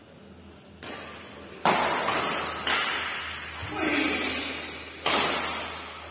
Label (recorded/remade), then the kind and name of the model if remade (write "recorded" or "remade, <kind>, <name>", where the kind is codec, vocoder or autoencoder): recorded